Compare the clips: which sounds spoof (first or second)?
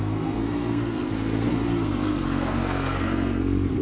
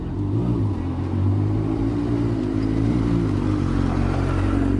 first